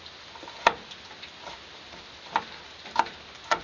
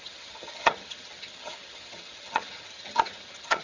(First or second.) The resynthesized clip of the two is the second